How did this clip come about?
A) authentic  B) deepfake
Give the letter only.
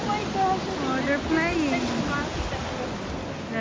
A